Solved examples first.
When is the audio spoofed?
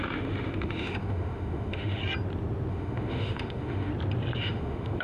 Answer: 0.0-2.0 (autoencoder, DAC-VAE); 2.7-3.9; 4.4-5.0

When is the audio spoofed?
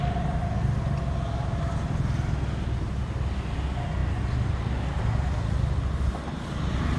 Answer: none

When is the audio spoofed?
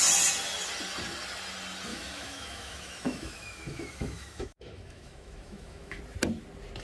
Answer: 1.9-6.0 (autoencoder, DAC-VAE)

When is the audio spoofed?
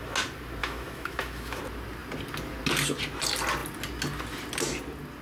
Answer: 0.6-1.6 (autoencoder, DAC-VAE)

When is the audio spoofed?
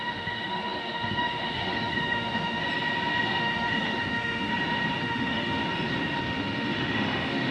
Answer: 0.0-2.6 (autoencoder, DAC-VAE); 3.4-4.5; 5.0-5.6; 6.2-7.5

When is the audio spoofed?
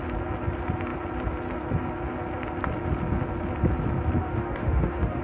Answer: 4.2-5.2 (autoencoder, DAC-VAE)